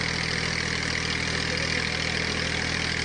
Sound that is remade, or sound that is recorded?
recorded